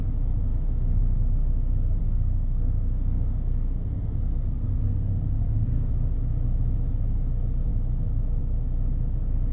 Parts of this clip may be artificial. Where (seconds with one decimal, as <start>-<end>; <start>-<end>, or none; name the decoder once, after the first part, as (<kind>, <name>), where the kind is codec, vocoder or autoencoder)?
2.0-5.9 (codec, SNAC)